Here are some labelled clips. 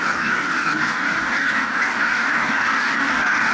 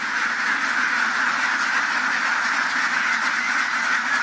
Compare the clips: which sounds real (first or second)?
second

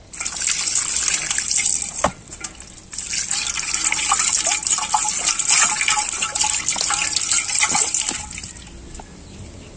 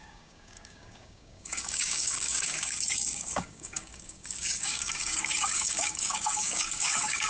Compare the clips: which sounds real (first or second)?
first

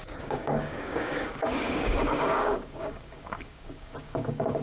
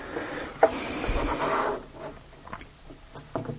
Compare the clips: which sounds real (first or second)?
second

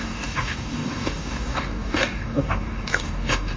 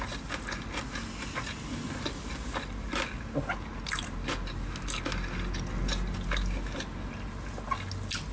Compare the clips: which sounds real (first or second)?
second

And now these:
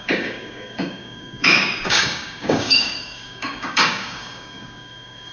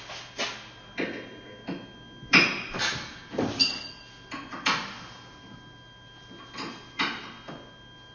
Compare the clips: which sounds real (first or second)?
second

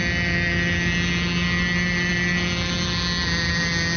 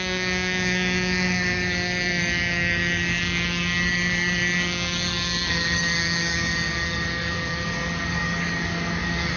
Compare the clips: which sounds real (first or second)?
first